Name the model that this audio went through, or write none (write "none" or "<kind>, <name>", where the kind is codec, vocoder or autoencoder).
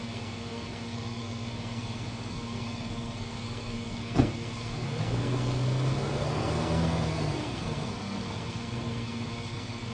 codec, SNAC